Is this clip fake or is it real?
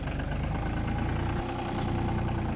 real